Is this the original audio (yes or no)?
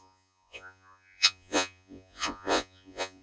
no